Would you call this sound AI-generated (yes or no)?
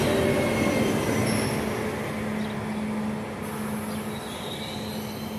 no